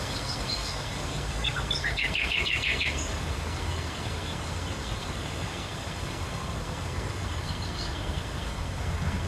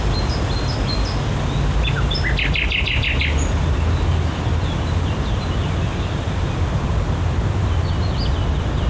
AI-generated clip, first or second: first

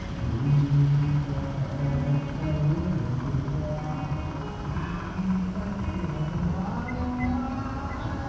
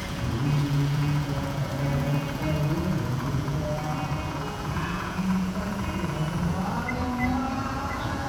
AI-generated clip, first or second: second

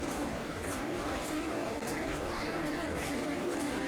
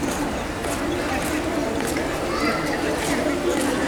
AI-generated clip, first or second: first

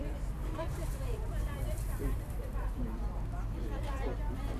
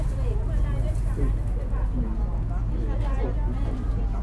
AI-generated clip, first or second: first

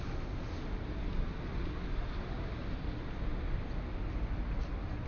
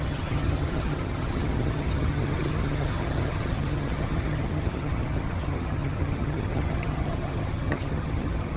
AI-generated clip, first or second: second